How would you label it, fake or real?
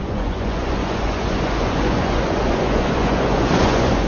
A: fake